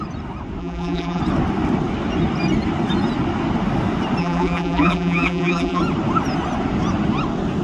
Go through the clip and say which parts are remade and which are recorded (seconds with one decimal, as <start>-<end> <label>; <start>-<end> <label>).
0.0-0.6 recorded; 0.6-1.2 remade; 1.2-4.2 recorded; 4.2-5.8 remade; 5.8-7.6 recorded